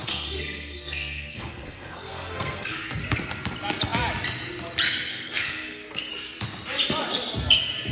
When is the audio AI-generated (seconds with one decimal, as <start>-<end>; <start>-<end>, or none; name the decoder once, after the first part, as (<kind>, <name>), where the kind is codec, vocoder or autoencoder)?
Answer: 0.0-3.0 (codec, SNAC); 5.1-6.1